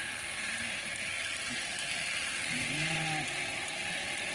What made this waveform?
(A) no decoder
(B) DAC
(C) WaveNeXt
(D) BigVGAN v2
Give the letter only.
D